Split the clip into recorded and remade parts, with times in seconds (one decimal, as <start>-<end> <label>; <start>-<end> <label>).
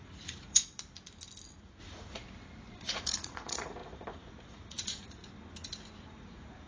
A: 0.0-0.6 remade; 0.6-1.8 recorded; 1.8-2.2 remade; 2.2-2.7 recorded; 2.7-5.2 remade; 5.2-6.1 recorded; 6.1-6.7 remade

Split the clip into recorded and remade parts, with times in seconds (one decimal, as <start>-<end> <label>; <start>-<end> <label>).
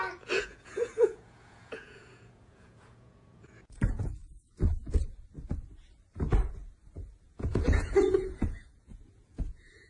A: 0.0-4.2 remade; 4.2-7.2 recorded; 7.2-9.9 remade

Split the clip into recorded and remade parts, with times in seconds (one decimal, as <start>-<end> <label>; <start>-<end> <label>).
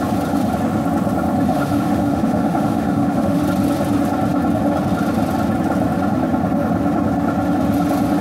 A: 0.0-1.5 recorded; 1.5-3.4 remade; 3.4-8.2 recorded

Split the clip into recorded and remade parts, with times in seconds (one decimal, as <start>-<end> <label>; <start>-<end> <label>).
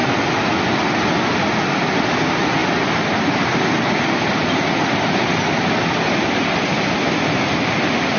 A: 0.0-8.2 recorded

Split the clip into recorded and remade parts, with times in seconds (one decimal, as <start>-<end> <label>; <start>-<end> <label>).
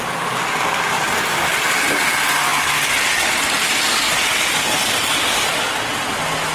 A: 0.0-6.5 recorded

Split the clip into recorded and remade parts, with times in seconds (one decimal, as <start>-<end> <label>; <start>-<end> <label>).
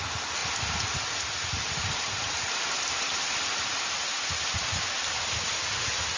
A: 0.0-6.2 recorded